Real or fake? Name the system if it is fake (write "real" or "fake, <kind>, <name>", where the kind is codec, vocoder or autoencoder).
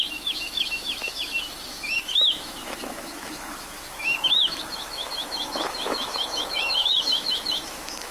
fake, autoencoder, DAC-VAE